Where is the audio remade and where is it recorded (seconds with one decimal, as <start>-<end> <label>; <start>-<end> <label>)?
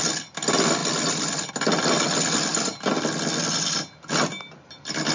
0.0-5.1 recorded